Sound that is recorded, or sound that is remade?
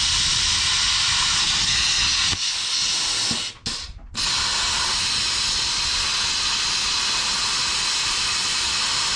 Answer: recorded